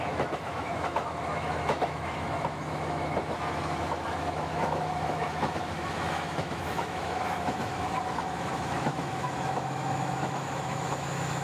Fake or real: fake